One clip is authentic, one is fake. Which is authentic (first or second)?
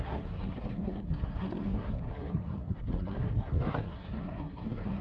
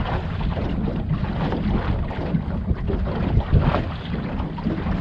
second